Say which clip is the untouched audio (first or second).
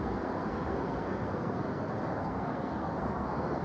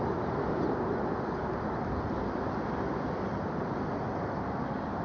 second